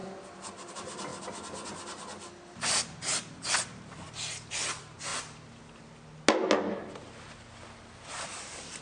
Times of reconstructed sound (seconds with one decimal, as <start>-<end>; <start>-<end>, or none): 0.7-1.1; 4.5-5.1; 8.1-8.8